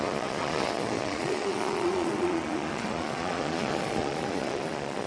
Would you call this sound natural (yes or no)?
no